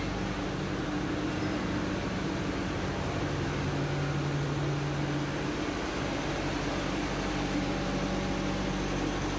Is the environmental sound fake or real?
real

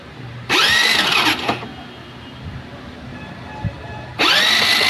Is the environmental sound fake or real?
real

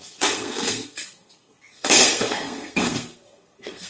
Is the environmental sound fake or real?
fake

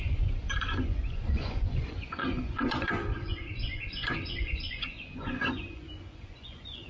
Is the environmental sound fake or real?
fake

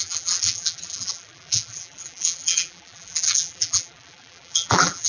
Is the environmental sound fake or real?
fake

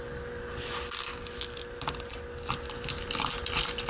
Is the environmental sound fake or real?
real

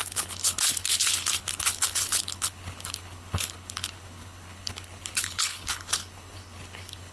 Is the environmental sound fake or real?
fake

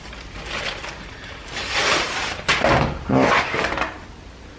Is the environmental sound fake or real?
real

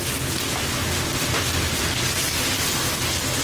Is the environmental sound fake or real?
real